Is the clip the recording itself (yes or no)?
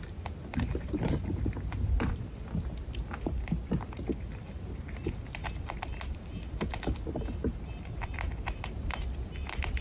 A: yes